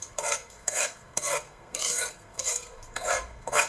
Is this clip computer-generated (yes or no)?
yes